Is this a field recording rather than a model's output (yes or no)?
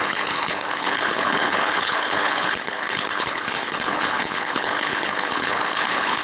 no